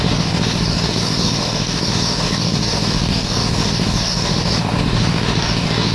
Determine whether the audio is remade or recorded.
remade